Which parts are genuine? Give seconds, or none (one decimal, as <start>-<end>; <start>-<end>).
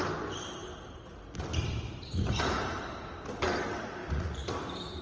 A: 0.0-4.0; 4.5-5.0